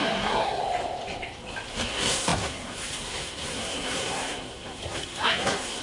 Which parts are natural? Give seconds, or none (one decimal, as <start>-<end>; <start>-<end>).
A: 0.6-1.7